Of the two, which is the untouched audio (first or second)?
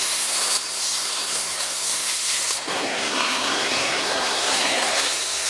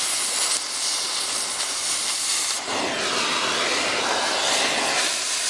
second